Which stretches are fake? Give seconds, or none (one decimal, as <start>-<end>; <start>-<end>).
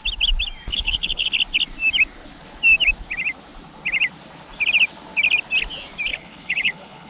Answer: 0.7-1.3; 6.1-7.1